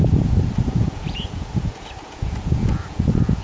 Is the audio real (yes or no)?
no